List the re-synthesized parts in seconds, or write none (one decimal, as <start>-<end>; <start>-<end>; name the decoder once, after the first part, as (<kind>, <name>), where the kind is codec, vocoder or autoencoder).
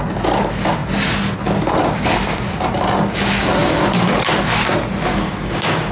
5.1-5.9 (codec, DAC)